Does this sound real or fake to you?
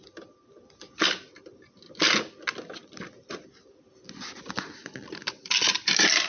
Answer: real